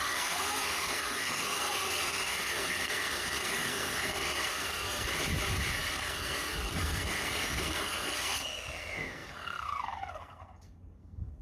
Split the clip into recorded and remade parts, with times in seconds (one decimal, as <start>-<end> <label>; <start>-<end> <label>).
0.0-5.1 remade; 5.1-5.8 recorded; 5.8-11.4 remade